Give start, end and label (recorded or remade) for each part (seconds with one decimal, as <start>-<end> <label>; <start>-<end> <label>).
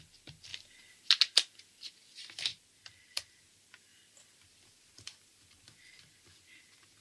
0.0-2.5 recorded; 2.5-3.4 remade; 3.4-3.9 recorded; 3.9-6.0 remade; 6.0-7.0 recorded